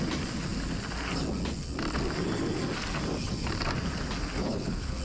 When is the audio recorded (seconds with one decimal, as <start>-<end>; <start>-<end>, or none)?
0.0-4.4